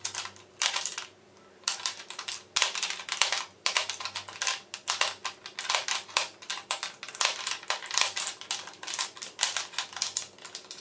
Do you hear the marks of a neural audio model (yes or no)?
no